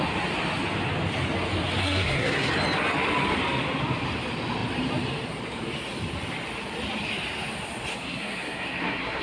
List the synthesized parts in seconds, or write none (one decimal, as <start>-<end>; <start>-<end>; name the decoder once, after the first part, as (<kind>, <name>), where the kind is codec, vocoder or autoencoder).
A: 1.8-2.5 (codec, SNAC); 7.9-9.2